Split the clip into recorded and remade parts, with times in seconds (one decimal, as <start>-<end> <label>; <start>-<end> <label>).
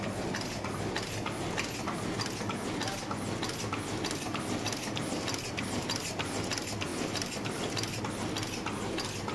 0.0-6.9 recorded; 6.9-8.0 remade; 8.0-9.3 recorded